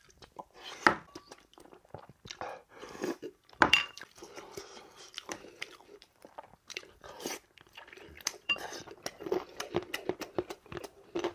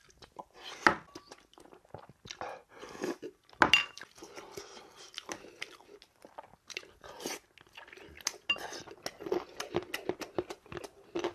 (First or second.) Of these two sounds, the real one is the second